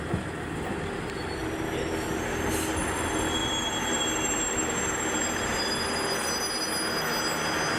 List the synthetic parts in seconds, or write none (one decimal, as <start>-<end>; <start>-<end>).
3.4-5.6